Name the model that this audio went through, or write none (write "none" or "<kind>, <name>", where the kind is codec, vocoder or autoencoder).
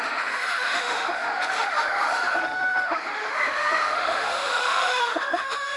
autoencoder, DAC-VAE